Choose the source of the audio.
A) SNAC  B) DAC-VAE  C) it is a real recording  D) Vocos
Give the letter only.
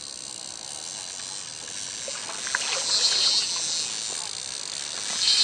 C